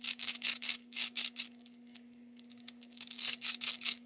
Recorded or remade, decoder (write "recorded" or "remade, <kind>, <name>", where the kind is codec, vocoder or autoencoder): remade, codec, DAC